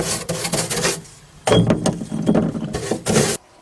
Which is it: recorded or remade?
recorded